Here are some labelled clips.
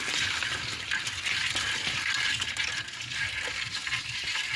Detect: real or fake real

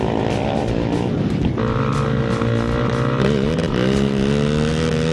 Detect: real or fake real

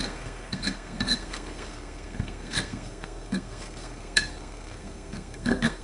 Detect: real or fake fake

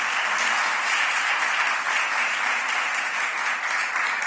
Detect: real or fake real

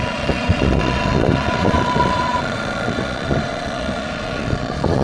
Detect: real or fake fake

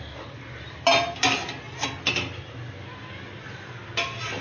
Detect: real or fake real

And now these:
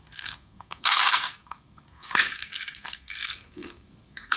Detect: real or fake fake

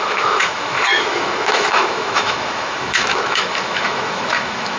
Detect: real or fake fake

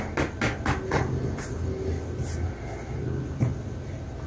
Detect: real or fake real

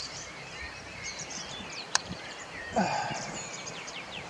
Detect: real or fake fake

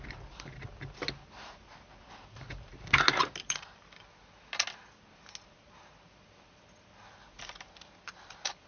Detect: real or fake real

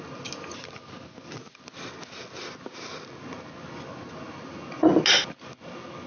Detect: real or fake real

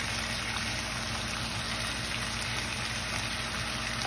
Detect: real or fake real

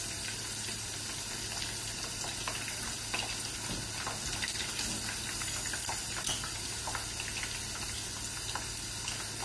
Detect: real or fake real